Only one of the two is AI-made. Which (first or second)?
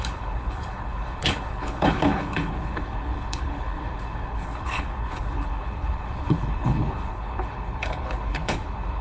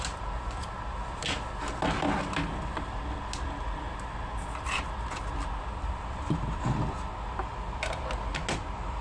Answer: first